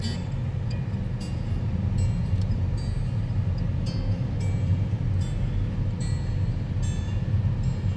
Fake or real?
real